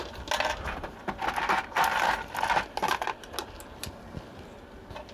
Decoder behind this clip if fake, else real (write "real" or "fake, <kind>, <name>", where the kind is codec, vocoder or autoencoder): real